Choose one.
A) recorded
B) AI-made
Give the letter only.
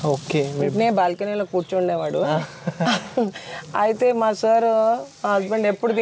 A